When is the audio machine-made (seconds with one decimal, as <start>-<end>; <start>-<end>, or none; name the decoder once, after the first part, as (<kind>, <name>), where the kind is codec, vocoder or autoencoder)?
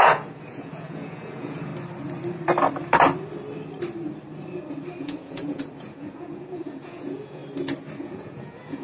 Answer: 0.0-1.7 (vocoder, Vocos); 5.0-7.4; 8.0-8.8